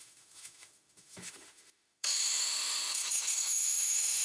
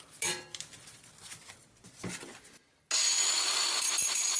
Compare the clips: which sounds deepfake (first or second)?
first